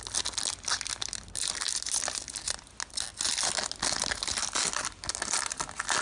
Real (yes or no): yes